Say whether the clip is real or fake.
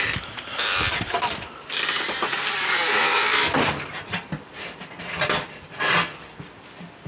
fake